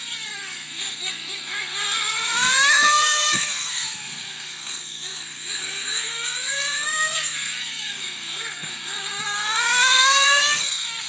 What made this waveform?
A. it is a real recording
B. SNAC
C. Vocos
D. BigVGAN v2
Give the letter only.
B